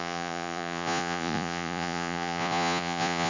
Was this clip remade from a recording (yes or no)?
yes